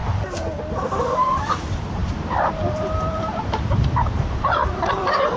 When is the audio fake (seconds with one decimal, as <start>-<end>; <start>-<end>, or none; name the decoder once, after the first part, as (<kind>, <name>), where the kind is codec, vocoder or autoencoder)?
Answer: 1.0-5.4 (vocoder, BigVGAN v2)